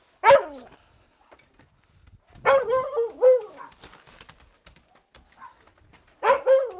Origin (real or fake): real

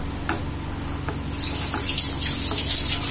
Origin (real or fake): real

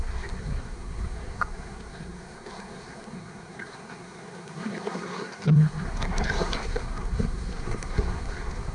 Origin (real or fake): fake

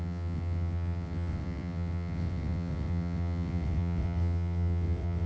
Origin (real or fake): fake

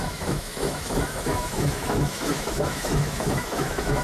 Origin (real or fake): fake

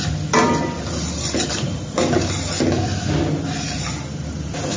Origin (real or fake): real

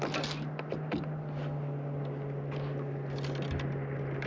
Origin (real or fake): real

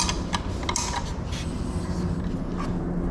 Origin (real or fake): real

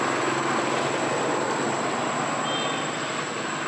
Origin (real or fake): real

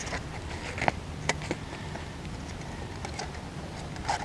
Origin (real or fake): real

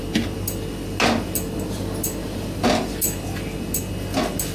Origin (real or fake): real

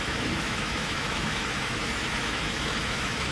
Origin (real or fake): fake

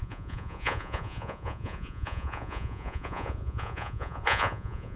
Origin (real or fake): fake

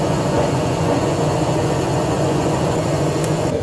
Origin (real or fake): fake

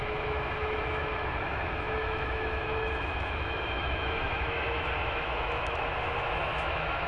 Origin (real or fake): fake